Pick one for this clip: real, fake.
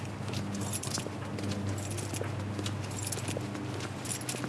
real